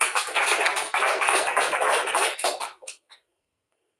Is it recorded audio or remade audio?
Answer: remade